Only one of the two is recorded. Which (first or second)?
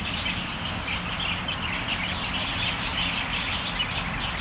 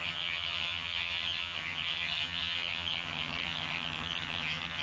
first